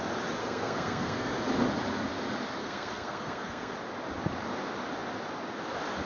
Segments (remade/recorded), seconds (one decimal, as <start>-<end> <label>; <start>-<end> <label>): 0.0-0.4 recorded; 0.4-1.3 remade; 1.3-2.6 recorded; 2.6-3.7 remade; 3.7-6.1 recorded